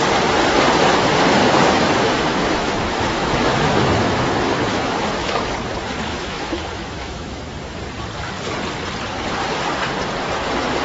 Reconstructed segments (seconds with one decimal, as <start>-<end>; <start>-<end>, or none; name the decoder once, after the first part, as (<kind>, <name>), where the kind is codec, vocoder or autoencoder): 1.4-5.5 (autoencoder, DAC-VAE); 6.1-7.4